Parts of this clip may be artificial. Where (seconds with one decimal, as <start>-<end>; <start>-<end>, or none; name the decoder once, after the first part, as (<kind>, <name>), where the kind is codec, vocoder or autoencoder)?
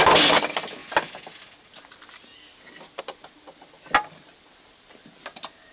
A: none